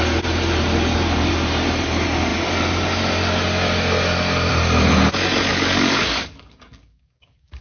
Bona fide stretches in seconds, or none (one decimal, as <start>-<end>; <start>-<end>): 0.0-5.5